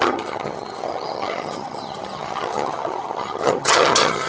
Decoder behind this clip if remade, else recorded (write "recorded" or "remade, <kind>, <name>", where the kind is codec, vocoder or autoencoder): remade, vocoder, HiFi-GAN